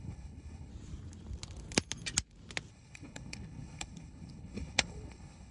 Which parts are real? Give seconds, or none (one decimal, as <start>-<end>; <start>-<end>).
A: 0.7-2.7